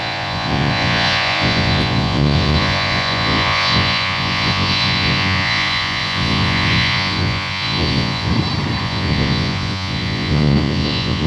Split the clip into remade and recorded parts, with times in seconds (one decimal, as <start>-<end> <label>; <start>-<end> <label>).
0.0-8.3 remade; 8.3-8.8 recorded; 8.8-11.3 remade

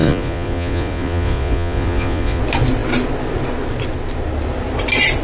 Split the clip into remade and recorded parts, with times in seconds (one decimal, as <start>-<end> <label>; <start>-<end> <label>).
0.0-2.4 remade; 2.4-5.2 recorded